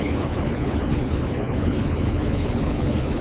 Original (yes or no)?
no